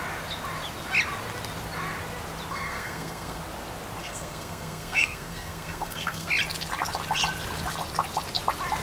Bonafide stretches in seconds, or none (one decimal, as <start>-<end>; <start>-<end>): 0.0-2.5; 3.4-4.0; 6.3-8.8